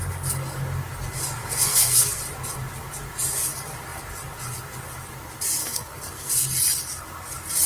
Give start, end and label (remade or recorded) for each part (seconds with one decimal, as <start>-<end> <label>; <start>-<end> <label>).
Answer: 0.0-1.4 recorded; 1.4-2.2 remade; 2.2-5.6 recorded; 5.6-6.3 remade; 6.3-7.7 recorded